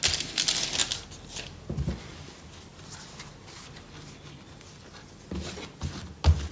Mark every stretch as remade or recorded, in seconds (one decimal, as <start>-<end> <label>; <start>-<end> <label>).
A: 0.0-6.5 recorded